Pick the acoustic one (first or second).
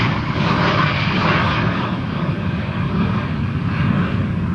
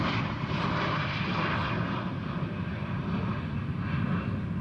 second